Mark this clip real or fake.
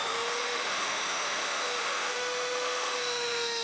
fake